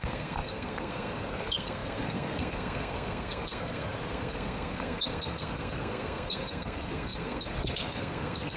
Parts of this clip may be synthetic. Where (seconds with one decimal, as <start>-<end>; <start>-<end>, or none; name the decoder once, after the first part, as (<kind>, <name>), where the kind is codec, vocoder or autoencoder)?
0.0-8.6 (codec, SNAC)